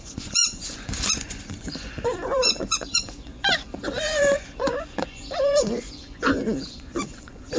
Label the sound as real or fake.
fake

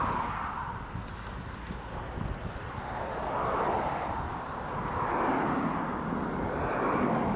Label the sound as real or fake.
real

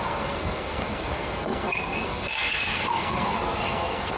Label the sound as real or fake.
fake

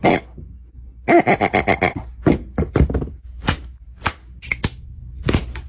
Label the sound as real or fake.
real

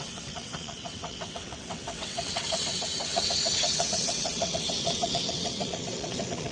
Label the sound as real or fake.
fake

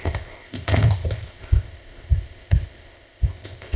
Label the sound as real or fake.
fake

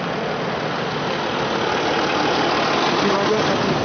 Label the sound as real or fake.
real